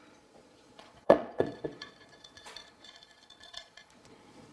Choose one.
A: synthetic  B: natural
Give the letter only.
A